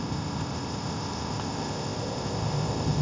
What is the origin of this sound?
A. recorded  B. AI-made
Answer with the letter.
B